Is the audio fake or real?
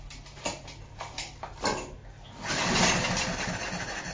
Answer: real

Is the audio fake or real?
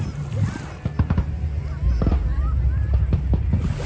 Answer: real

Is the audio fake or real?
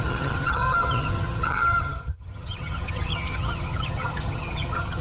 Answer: fake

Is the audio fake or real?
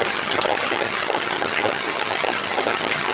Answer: fake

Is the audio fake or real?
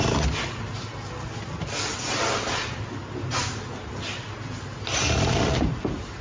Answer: real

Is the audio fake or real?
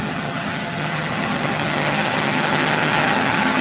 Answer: fake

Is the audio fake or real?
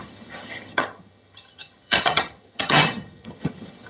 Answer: fake